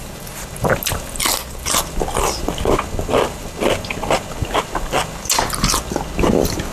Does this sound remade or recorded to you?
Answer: recorded